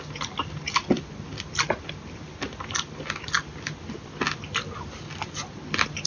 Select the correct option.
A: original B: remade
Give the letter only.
A